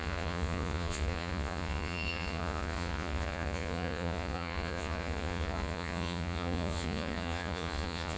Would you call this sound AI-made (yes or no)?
yes